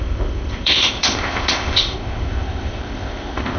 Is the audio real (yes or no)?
no